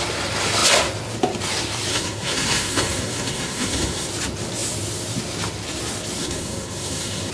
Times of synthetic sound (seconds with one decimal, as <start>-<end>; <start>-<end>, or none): 1.9-4.1; 6.2-7.3